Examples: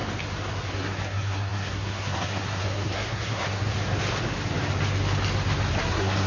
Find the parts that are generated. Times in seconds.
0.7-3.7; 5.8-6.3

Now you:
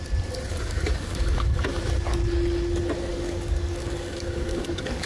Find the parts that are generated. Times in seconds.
0.5-1.8; 3.1-5.1

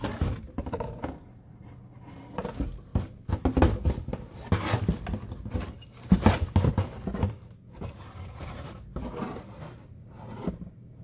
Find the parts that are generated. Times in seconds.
0.0-2.9; 7.9-11.0

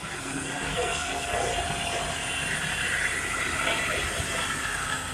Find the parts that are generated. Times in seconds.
0.0-1.5; 4.6-5.1

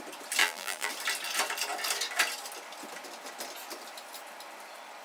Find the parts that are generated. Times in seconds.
0.4-0.9

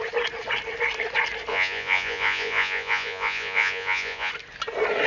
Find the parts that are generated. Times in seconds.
1.5-4.3